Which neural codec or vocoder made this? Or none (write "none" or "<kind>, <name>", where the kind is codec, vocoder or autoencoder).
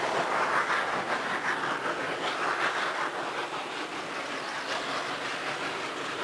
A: none